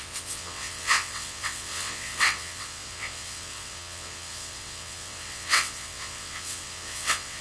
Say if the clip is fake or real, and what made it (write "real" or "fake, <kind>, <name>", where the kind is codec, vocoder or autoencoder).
fake, vocoder, WaveNeXt